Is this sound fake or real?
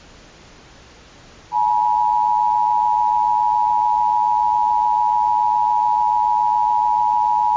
real